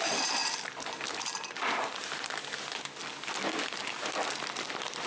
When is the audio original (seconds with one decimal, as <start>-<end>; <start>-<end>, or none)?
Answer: 0.0-5.1